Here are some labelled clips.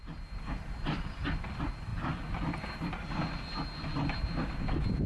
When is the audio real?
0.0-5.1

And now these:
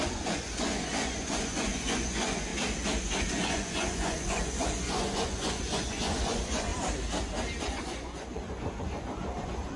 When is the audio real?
2.5-3.0; 6.7-7.6

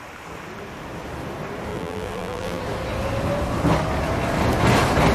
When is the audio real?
0.0-1.7; 2.6-5.1

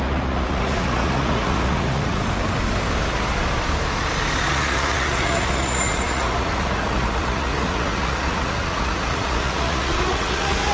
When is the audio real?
2.2-4.5